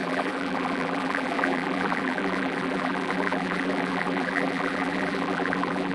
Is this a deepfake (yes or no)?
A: yes